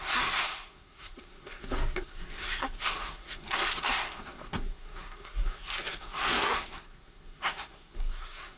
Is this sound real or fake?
fake